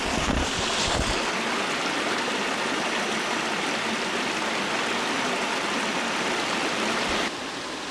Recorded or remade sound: recorded